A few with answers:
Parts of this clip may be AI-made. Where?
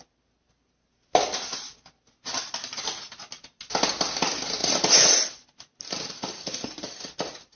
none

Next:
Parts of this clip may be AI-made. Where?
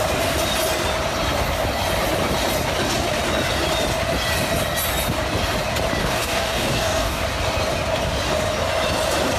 6.0-7.2 (codec, DAC)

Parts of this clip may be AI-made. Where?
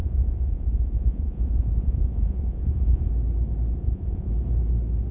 0.0-3.1 (vocoder, Vocos); 3.8-4.3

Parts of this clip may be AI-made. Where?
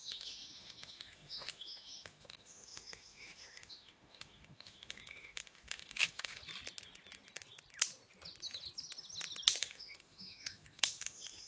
0.0-6.4 (autoencoder, DAC-VAE); 9.6-11.5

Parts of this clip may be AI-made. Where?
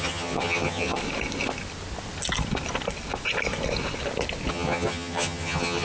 0.0-1.0 (vocoder, HiFi-GAN); 4.5-5.8